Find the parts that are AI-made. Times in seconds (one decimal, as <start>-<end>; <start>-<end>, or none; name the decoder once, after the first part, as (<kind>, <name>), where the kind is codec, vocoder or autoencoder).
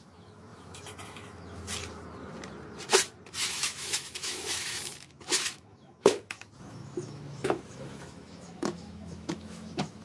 0.0-1.6 (autoencoder, DAC-VAE); 3.4-10.0